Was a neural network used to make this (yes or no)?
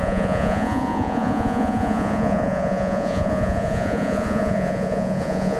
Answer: yes